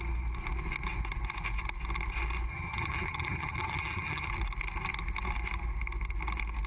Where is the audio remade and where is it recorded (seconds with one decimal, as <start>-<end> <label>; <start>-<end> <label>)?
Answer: 0.0-2.5 recorded; 2.5-4.3 remade; 4.3-6.7 recorded